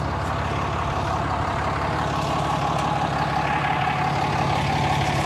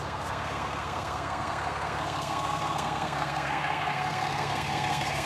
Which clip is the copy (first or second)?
second